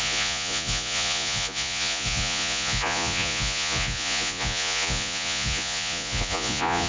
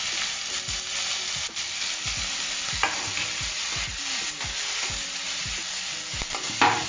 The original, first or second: second